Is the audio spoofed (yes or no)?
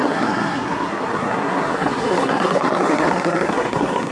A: yes